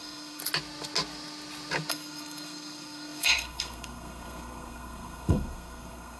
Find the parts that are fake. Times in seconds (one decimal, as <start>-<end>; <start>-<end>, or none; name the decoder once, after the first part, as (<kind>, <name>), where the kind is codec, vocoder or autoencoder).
0.0-0.4 (codec, SNAC); 1.9-6.2